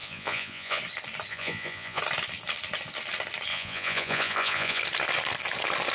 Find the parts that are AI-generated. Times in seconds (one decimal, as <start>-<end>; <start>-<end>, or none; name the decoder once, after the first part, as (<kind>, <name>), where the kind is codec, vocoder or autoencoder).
0.0-0.8 (vocoder, Vocos); 1.3-2.0; 3.5-4.8